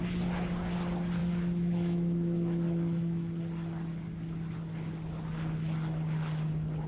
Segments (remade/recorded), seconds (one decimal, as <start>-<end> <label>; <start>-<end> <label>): 0.0-1.2 recorded; 1.2-3.4 remade; 3.4-6.9 recorded